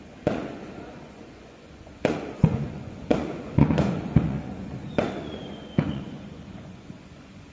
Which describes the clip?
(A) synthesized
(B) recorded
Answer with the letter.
A